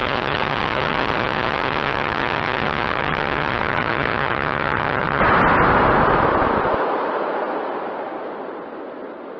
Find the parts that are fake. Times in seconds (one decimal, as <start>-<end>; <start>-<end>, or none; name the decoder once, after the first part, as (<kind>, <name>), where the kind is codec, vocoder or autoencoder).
0.0-5.2 (vocoder, HiFi-GAN)